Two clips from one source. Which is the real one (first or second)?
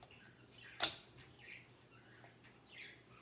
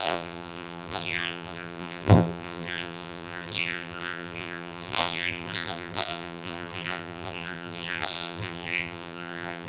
first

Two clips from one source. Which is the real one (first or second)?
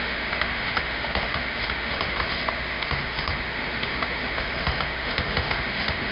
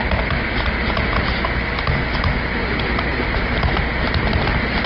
second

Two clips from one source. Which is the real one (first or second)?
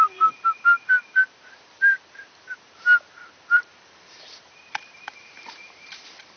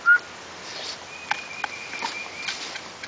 second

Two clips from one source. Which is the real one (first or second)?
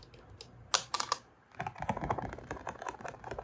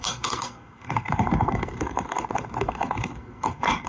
first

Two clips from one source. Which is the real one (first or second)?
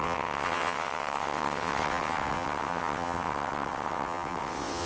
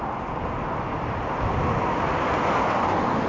second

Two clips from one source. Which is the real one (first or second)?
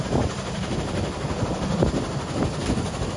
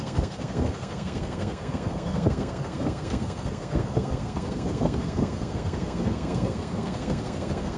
first